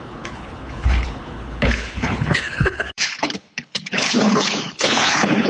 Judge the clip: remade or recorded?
remade